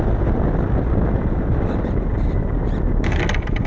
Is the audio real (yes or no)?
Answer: yes